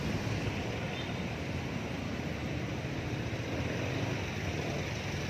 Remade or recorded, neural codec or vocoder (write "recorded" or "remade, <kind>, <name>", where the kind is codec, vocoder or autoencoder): recorded